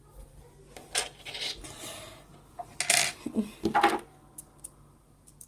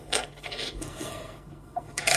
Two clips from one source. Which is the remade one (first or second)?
second